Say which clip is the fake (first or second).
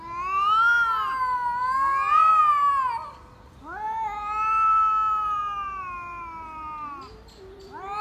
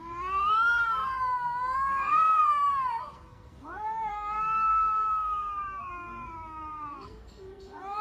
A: second